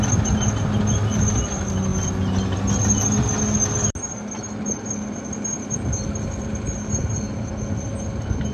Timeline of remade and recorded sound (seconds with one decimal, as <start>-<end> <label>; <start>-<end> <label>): 0.0-8.5 recorded